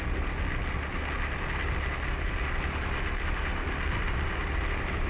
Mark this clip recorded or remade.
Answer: recorded